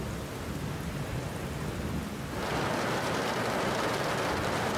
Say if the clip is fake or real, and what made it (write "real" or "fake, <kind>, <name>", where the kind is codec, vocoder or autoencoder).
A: real